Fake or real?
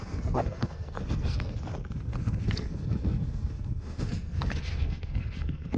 fake